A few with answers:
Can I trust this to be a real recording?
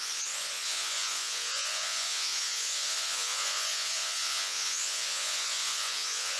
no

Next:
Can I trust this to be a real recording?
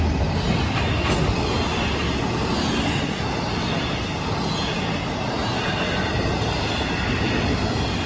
yes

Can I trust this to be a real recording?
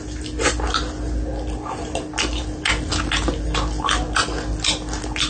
yes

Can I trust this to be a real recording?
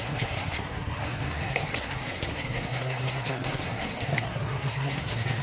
no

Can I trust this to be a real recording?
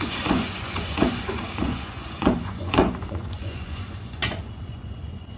no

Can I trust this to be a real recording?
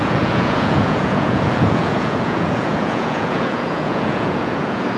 no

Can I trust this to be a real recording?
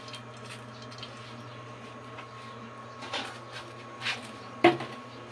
yes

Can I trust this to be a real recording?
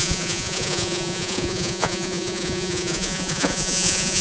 no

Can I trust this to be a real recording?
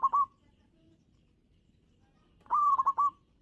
no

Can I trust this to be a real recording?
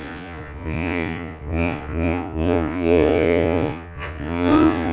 no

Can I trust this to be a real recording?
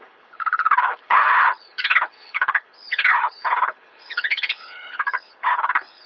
no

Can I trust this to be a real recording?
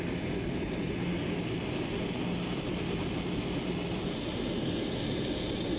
yes